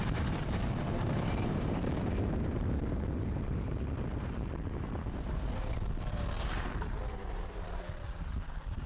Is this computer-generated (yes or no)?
yes